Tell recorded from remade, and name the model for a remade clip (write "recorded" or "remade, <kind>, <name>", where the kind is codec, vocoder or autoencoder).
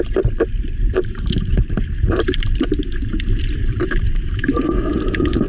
remade, vocoder, BigVGAN v2